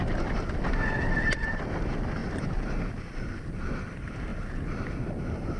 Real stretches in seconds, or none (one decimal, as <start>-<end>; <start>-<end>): 4.3-5.6